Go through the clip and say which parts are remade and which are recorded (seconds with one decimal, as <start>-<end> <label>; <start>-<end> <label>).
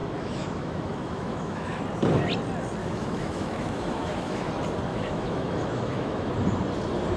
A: 0.0-1.8 remade; 1.8-2.8 recorded; 2.8-4.5 remade; 4.5-4.9 recorded; 4.9-6.3 remade; 6.3-7.2 recorded